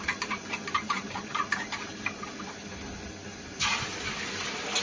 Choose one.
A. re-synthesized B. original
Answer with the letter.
B